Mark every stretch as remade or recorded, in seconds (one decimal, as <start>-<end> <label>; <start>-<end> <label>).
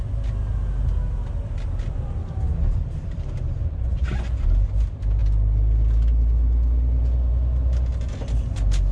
0.0-1.4 recorded; 1.4-3.4 remade; 3.4-5.2 recorded; 5.2-7.3 remade; 7.3-8.9 recorded